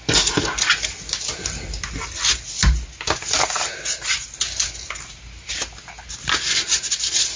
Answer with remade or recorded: recorded